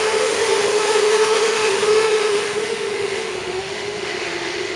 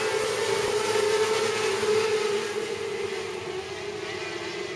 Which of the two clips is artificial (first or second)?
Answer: first